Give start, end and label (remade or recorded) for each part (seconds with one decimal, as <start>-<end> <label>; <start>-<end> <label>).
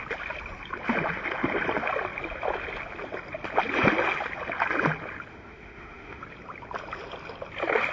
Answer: 0.0-5.3 recorded; 5.3-6.2 remade; 6.2-7.9 recorded